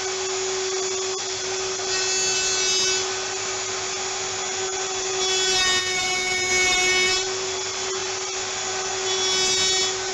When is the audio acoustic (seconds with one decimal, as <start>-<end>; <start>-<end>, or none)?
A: 0.0-5.8; 6.5-10.1